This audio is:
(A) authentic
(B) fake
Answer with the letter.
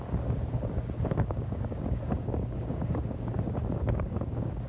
B